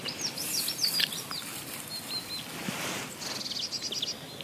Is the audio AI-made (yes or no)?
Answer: no